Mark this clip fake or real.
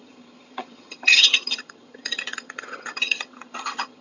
fake